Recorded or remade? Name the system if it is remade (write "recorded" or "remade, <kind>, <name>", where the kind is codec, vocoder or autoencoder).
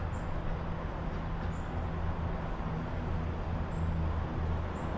recorded